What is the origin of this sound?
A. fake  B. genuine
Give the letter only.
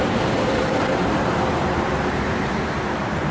A